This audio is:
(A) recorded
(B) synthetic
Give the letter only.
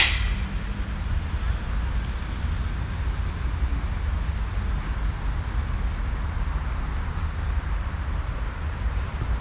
A